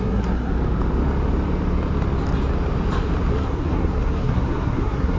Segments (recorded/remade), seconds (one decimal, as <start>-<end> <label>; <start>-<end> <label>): 0.0-0.5 remade; 0.5-3.3 recorded; 3.3-5.2 remade